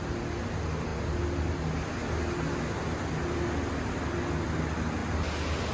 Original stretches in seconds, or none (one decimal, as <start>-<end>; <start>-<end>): 0.0-5.7